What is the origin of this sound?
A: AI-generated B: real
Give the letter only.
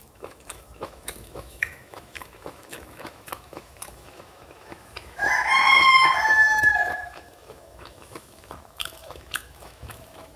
A